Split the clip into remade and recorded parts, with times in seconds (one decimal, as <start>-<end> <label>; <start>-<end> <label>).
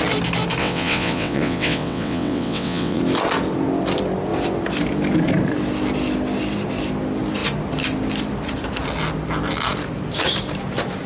0.0-0.6 recorded; 0.6-3.0 remade; 3.0-11.1 recorded